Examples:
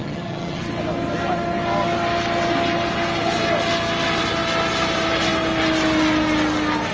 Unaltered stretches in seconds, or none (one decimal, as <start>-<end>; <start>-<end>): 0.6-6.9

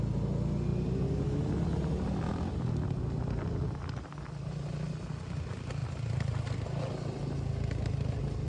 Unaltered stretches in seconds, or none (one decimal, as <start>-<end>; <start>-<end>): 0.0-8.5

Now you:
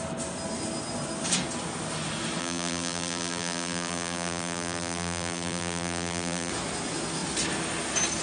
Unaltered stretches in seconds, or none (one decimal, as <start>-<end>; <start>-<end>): 0.0-2.4; 6.5-8.2